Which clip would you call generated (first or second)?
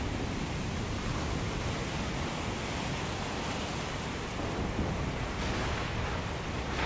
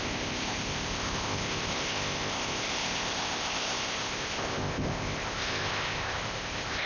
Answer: second